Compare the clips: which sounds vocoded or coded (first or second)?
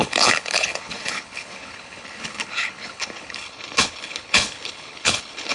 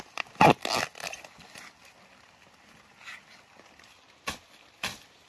first